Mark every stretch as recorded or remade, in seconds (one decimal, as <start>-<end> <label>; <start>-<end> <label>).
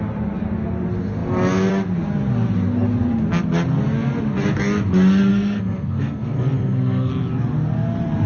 0.0-5.3 recorded; 5.3-7.1 remade; 7.1-8.3 recorded